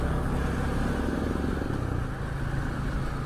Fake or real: real